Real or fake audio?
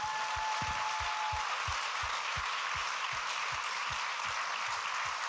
real